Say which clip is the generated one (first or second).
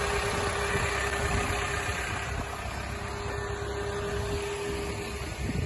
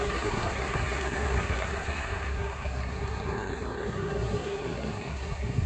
second